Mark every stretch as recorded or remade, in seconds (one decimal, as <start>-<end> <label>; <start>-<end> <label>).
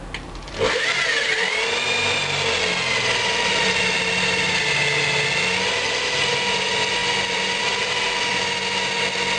0.0-9.4 recorded